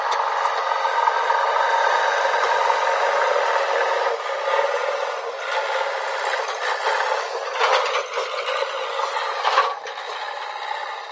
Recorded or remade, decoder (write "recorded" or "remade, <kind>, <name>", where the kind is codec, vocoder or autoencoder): recorded